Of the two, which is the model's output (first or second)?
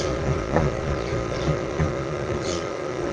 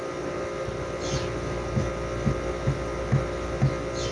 first